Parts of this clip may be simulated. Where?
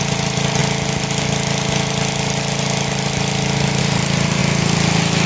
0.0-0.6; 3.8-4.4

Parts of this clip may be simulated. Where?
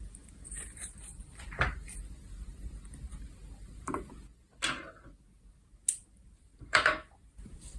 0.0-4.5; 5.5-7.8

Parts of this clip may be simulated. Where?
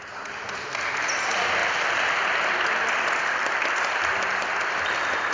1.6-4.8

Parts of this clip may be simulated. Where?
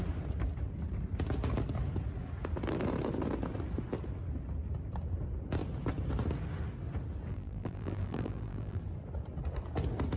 7.3-8.8